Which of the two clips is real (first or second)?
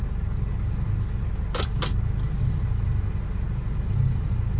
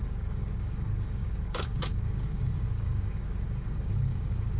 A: first